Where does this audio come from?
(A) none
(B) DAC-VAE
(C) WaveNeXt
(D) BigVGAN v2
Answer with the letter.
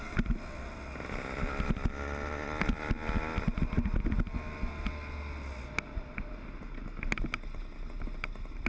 A